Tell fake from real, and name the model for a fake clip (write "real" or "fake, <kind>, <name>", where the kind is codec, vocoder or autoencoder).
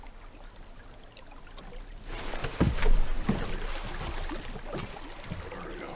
real